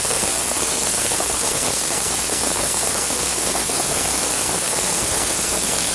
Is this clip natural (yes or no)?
no